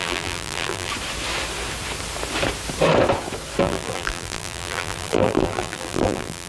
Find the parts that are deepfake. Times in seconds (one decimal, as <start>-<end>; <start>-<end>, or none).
0.0-0.9; 3.6-6.5